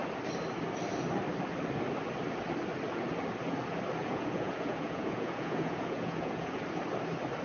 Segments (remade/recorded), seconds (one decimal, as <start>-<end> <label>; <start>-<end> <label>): 0.0-4.0 recorded; 4.0-6.6 remade; 6.6-7.4 recorded